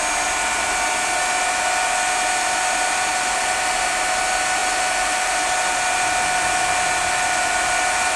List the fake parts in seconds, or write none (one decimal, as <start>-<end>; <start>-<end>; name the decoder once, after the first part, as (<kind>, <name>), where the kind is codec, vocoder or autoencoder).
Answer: none